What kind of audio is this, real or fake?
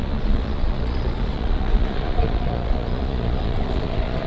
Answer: fake